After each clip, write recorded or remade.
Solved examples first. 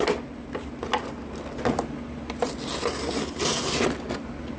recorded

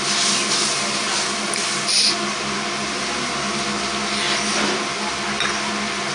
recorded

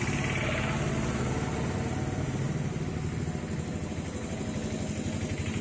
recorded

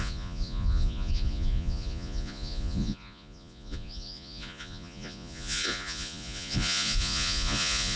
remade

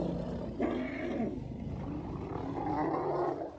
recorded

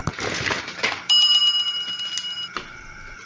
recorded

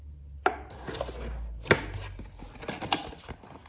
recorded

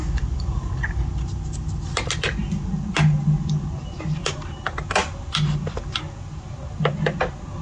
recorded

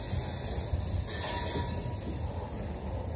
recorded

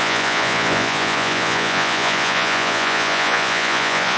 remade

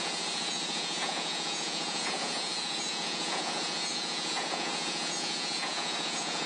remade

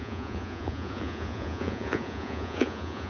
remade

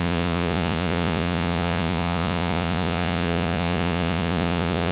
remade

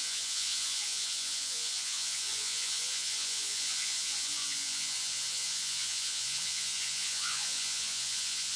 remade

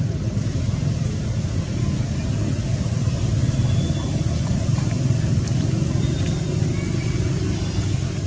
recorded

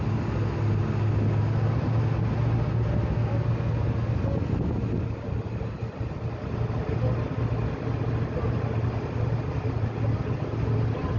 recorded